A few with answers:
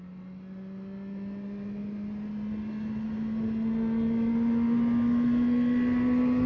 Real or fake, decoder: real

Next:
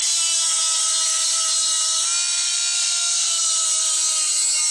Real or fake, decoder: real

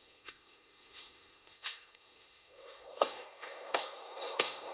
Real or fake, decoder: fake, codec, SNAC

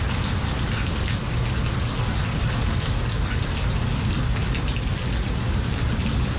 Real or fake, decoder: real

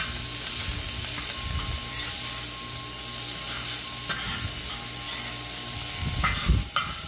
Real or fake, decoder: real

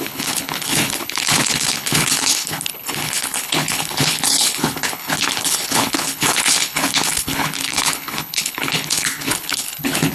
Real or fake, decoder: fake, codec, HILCodec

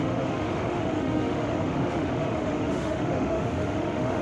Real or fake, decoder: fake, autoencoder, DAC-VAE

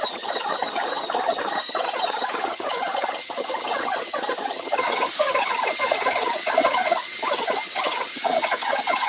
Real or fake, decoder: fake, vocoder, HiFi-GAN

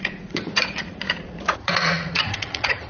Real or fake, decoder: fake, vocoder, Vocos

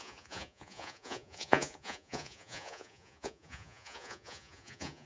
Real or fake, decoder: fake, vocoder, Vocos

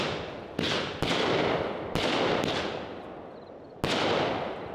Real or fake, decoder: real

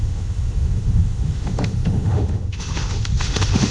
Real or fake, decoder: fake, autoencoder, DAC-VAE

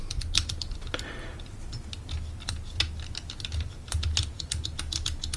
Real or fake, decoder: real